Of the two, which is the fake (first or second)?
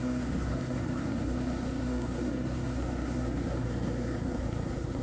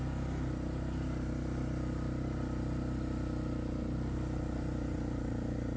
first